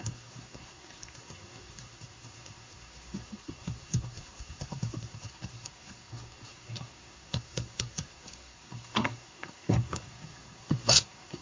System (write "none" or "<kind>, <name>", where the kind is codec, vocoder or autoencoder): codec, SNAC